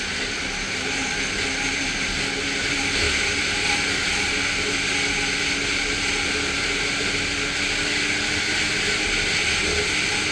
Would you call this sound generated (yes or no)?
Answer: no